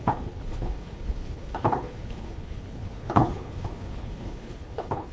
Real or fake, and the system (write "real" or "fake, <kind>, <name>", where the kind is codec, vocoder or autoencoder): fake, codec, HILCodec